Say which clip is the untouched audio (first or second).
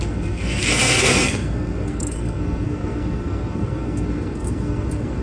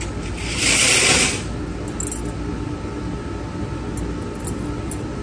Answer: second